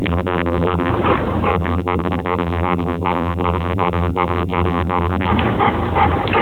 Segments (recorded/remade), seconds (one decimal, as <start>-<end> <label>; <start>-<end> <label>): 0.0-0.9 remade; 0.9-1.5 recorded; 1.5-5.3 remade; 5.3-6.4 recorded